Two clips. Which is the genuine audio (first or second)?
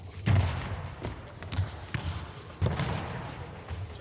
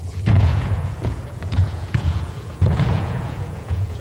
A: first